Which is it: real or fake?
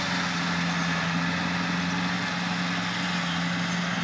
real